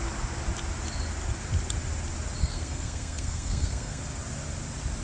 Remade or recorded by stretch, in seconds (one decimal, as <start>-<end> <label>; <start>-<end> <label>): 0.0-2.4 recorded; 2.4-4.0 remade; 4.0-5.0 recorded